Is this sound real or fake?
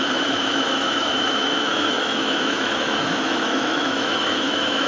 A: fake